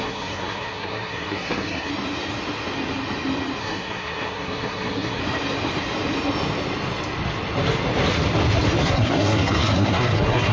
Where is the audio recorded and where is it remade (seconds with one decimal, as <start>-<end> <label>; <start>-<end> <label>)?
0.0-1.9 remade; 1.9-3.6 recorded; 3.6-5.2 remade; 5.2-8.8 recorded; 8.8-10.5 remade